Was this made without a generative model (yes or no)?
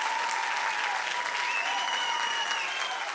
yes